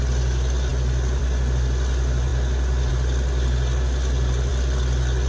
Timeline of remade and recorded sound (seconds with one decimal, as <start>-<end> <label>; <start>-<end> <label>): 0.0-5.3 recorded